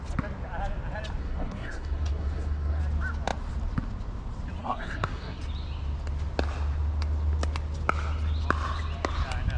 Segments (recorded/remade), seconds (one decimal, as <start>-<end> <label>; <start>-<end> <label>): 0.0-1.2 recorded; 1.2-2.8 remade; 2.8-4.6 recorded; 4.6-5.4 remade; 5.4-9.6 recorded